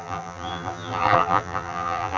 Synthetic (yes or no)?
yes